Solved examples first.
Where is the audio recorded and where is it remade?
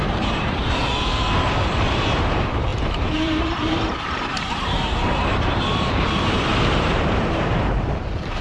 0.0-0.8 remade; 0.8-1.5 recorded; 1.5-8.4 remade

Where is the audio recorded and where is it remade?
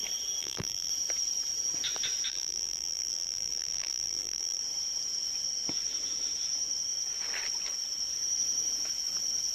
0.0-0.4 recorded; 0.4-0.9 remade; 0.9-2.3 recorded; 2.3-4.6 remade; 4.6-9.5 recorded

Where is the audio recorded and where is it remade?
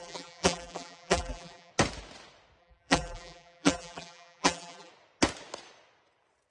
0.0-1.7 remade; 1.7-2.6 recorded; 2.6-4.9 remade; 4.9-6.5 recorded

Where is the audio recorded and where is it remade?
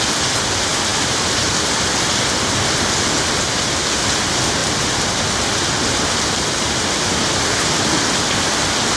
0.0-9.0 recorded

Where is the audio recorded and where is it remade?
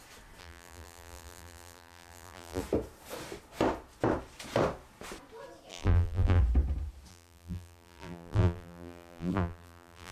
0.0-0.4 recorded; 0.4-2.6 remade; 2.6-5.7 recorded; 5.7-6.4 remade; 6.4-7.1 recorded; 7.1-10.1 remade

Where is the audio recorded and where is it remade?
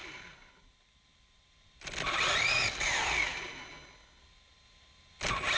0.0-3.4 remade; 3.4-5.6 recorded